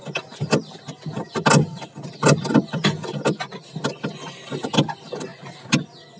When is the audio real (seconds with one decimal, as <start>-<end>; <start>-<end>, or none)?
0.0-6.2